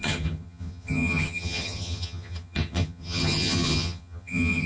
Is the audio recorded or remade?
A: remade